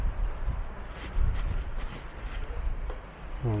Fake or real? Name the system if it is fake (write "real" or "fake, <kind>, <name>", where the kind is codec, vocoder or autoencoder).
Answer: real